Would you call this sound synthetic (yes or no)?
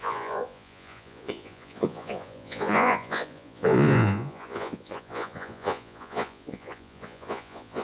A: yes